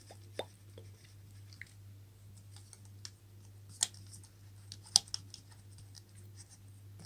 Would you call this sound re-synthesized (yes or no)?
no